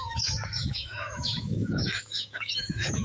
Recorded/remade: remade